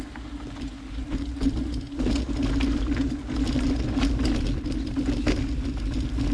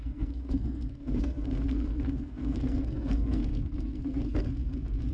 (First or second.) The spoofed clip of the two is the second